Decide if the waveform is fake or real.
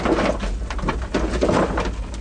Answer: real